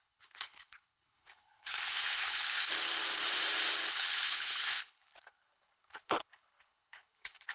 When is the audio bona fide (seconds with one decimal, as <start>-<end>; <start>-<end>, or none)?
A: 2.7-3.9